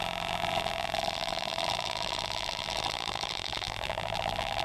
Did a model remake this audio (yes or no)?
yes